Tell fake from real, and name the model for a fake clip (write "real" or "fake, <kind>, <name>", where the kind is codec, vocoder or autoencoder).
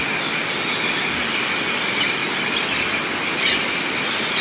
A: real